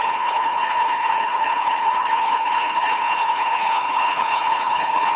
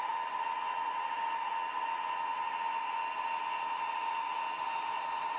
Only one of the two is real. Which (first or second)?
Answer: second